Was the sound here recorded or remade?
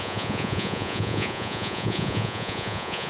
remade